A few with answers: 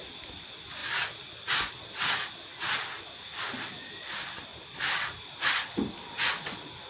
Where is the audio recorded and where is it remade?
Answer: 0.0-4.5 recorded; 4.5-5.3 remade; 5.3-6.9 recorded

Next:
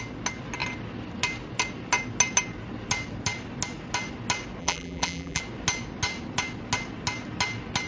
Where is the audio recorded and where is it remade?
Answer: 0.0-4.6 recorded; 4.6-5.4 remade; 5.4-7.9 recorded

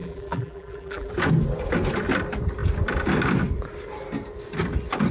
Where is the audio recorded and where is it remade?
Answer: 0.0-1.1 remade; 1.1-5.1 recorded

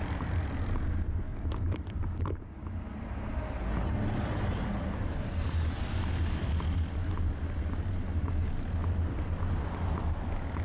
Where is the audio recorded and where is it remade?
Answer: 0.0-1.3 recorded; 1.3-2.1 remade; 2.1-8.8 recorded; 8.8-9.5 remade; 9.5-10.6 recorded

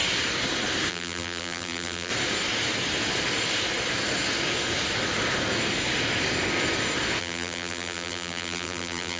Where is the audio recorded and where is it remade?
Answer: 0.0-0.9 recorded; 0.9-2.1 remade; 2.1-7.2 recorded; 7.2-9.2 remade